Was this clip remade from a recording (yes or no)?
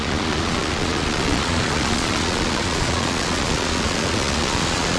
yes